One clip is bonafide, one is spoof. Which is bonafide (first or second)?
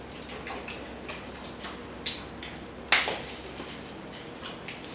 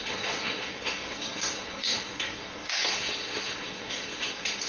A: first